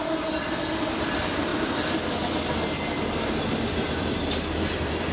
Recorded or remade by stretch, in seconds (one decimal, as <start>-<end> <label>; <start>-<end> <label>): 0.0-5.1 recorded